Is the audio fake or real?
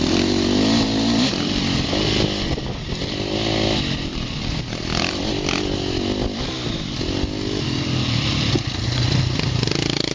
real